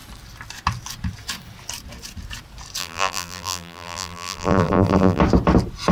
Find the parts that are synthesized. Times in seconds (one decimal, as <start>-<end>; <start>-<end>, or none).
2.8-5.2